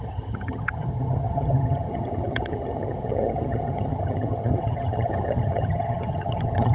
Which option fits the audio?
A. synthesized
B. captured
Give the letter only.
A